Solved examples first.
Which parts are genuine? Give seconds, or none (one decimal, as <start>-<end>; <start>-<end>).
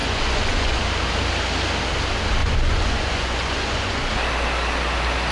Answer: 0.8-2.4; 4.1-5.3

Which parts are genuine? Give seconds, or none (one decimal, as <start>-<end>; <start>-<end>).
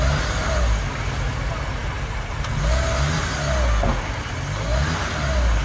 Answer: 0.0-5.6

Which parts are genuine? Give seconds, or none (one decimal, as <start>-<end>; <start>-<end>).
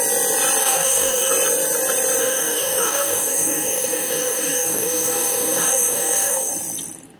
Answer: 0.0-0.6; 1.3-2.2; 6.5-7.2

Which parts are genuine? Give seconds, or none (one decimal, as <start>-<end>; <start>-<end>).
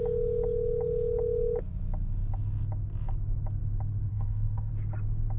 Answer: 0.0-4.1; 4.7-5.4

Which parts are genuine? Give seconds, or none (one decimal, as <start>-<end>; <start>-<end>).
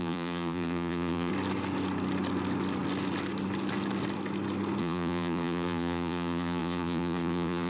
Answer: 1.3-4.8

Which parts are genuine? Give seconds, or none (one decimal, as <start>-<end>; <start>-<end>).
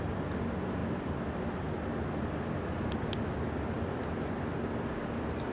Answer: 0.0-5.5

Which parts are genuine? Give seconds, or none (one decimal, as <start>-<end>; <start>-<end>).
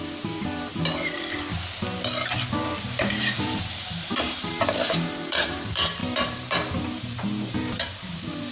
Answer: 0.7-2.8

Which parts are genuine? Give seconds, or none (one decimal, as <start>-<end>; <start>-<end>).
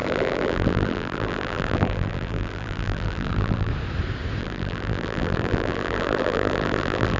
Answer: 3.7-4.4